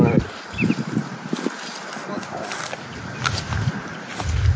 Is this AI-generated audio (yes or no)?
no